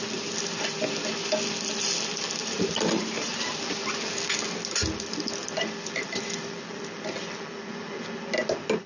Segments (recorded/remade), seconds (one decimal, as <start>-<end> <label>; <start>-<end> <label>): 0.0-2.4 recorded; 2.4-3.6 remade; 3.6-8.9 recorded